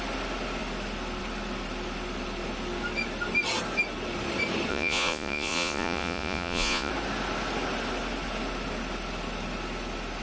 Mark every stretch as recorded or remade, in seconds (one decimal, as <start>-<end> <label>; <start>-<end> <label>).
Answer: 0.0-4.7 recorded; 4.7-6.9 remade; 6.9-10.2 recorded